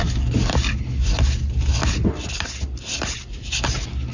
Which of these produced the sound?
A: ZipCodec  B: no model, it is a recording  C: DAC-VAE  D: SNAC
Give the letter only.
B